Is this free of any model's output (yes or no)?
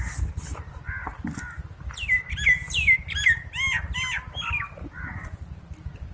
yes